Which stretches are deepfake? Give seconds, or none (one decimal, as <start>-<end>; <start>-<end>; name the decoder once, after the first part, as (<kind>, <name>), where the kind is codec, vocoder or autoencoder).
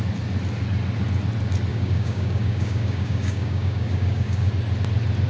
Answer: 1.7-4.5 (codec, DAC)